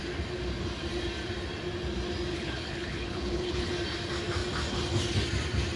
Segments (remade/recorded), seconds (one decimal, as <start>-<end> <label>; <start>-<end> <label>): 0.0-2.3 recorded; 2.3-3.7 remade; 3.7-5.8 recorded